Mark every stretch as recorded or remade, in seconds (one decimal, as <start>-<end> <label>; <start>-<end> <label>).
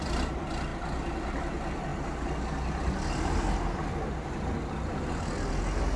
0.0-6.0 recorded